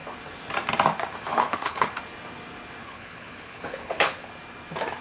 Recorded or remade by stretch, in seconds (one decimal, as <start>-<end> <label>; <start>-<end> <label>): 0.0-1.3 recorded; 1.3-1.9 remade; 1.9-2.8 recorded; 2.8-4.3 remade; 4.3-5.0 recorded